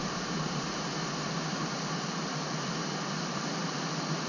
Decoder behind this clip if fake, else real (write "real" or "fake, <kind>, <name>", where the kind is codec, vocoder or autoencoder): real